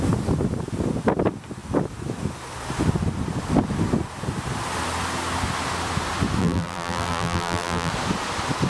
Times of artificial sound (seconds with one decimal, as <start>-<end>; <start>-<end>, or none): 6.4-7.9